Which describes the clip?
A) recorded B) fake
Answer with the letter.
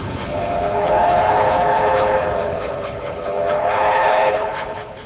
B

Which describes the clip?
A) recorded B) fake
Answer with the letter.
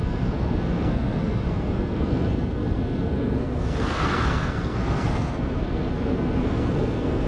B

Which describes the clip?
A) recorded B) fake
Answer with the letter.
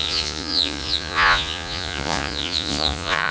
B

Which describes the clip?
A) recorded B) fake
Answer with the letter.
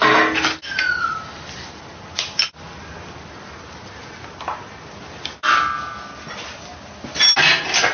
A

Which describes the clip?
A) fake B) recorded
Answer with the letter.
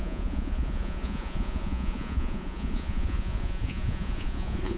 A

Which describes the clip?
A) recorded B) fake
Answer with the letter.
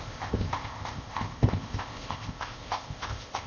B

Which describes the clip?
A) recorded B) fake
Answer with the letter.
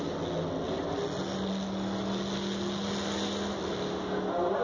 A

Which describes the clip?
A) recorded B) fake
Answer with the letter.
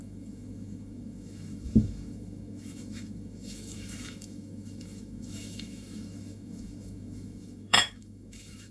B